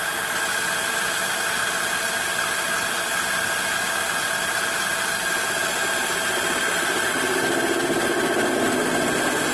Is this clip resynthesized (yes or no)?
no